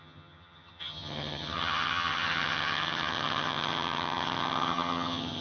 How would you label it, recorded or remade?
remade